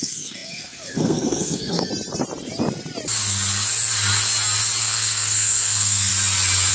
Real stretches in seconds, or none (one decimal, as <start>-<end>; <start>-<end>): 1.9-4.8; 6.1-6.7